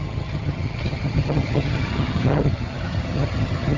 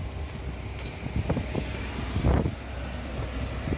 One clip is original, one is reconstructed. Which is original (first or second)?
second